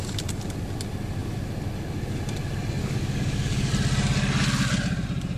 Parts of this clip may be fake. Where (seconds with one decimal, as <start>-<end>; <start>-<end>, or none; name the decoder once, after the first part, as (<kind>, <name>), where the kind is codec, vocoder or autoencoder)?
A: 2.8-3.7 (codec, DAC)